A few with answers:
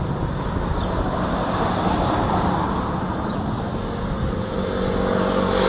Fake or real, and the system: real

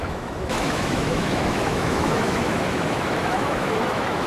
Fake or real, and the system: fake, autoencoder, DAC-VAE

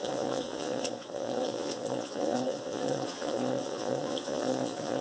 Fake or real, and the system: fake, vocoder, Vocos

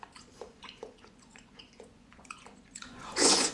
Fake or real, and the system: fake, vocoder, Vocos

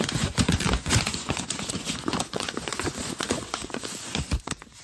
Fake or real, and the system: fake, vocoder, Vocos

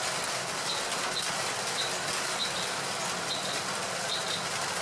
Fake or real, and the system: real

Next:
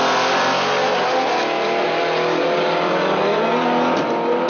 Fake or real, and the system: real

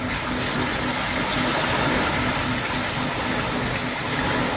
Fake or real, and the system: real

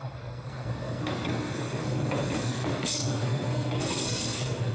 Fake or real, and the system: fake, codec, SNAC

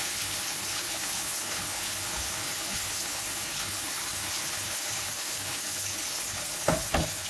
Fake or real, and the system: fake, codec, HILCodec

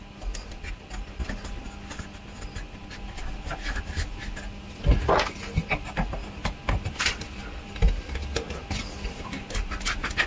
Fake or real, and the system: real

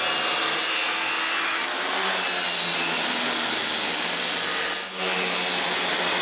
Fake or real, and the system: real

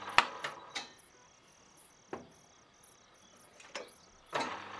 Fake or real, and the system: real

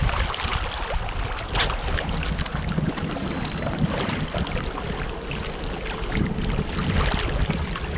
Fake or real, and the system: real